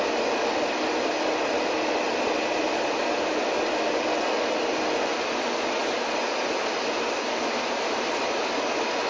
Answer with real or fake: real